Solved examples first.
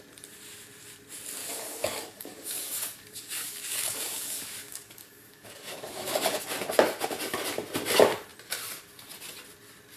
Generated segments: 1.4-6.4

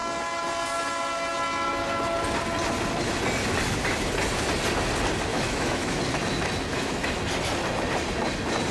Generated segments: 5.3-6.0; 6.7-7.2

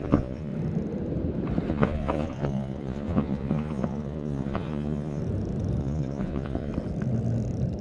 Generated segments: 0.0-0.5; 1.7-5.2; 5.8-6.7

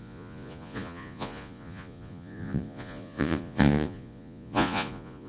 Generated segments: 0.0-5.3

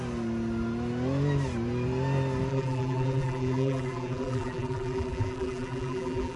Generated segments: 2.5-6.4

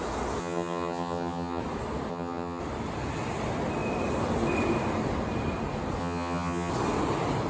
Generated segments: 0.4-1.6; 2.1-2.6; 6.0-6.7